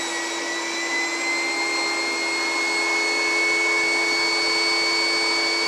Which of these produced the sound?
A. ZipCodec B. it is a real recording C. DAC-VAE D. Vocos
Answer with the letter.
B